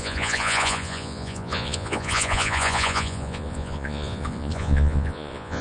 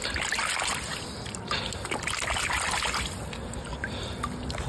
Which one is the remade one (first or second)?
first